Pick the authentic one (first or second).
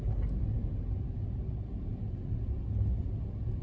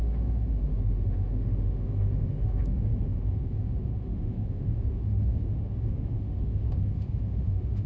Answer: first